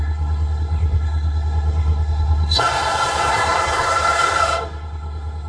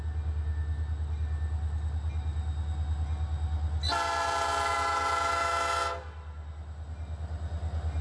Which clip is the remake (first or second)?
first